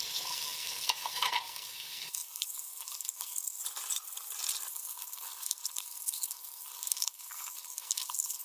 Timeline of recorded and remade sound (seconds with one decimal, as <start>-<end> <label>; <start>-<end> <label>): 0.0-3.6 remade; 3.6-4.7 recorded; 4.7-8.4 remade